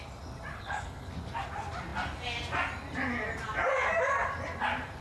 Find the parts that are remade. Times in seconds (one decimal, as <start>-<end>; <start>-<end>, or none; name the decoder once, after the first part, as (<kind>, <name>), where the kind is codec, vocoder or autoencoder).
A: 0.5-1.1 (codec, HILCodec)